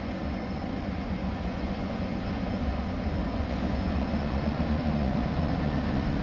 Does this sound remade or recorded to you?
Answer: remade